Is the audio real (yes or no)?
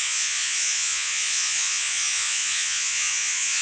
no